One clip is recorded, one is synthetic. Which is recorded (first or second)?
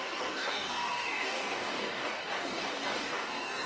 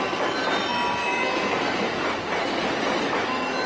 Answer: second